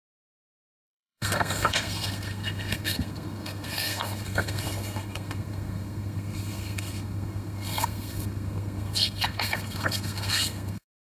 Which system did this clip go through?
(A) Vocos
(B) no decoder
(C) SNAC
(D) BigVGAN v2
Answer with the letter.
C